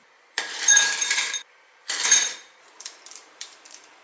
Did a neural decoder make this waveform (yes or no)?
yes